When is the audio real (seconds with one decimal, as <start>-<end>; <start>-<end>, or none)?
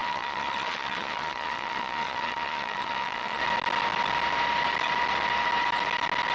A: 3.4-6.3